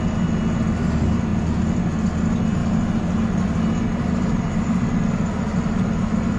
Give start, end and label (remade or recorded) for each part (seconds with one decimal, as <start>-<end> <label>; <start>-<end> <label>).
0.0-6.4 recorded